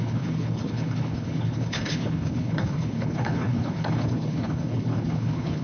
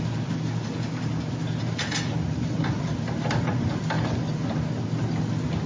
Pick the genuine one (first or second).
second